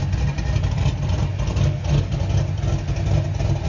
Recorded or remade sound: recorded